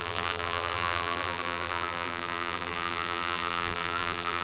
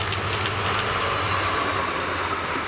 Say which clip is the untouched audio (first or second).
second